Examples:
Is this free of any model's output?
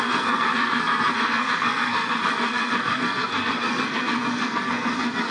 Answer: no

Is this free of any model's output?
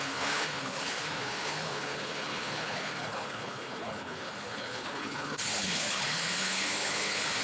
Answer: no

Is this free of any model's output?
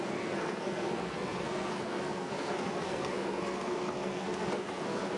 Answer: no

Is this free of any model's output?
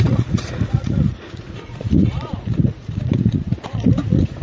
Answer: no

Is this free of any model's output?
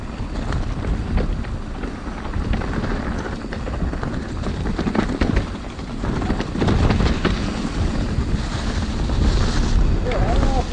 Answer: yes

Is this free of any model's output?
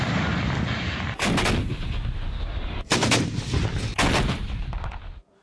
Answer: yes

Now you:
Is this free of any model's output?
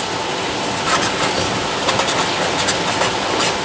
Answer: yes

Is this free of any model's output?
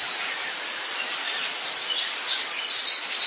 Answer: yes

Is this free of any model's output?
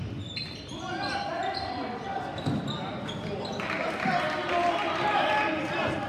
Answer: yes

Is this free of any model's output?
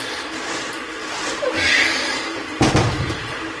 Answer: no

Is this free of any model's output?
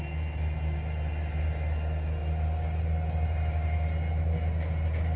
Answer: yes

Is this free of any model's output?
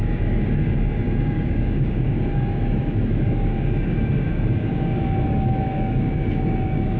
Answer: no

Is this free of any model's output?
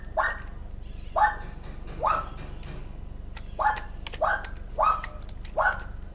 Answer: yes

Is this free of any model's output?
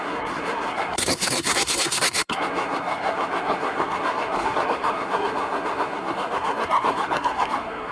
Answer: no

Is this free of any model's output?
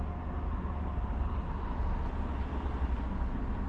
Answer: yes